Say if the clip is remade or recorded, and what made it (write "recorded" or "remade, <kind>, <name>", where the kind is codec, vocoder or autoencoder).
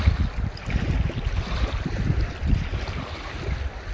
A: recorded